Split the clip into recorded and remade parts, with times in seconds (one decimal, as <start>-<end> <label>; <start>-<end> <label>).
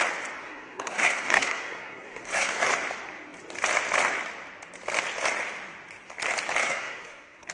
0.0-0.4 recorded; 0.4-2.7 remade; 2.7-6.6 recorded; 6.6-7.5 remade